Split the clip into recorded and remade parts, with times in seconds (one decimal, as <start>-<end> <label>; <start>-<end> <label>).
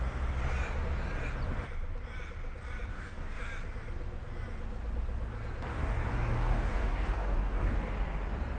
0.0-2.9 recorded; 2.9-3.4 remade; 3.4-5.7 recorded; 5.7-7.9 remade; 7.9-8.6 recorded